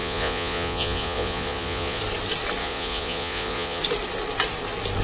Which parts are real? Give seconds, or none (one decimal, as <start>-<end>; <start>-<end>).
2.0-2.6; 3.8-5.0